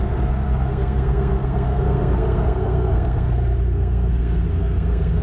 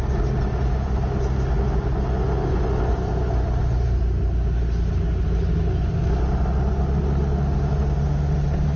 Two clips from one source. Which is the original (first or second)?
second